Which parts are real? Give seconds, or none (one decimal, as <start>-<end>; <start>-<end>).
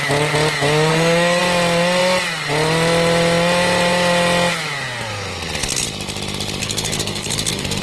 0.0-0.9; 1.4-6.6